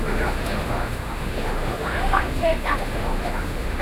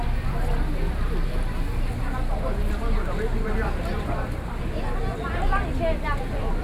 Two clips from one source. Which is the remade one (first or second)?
first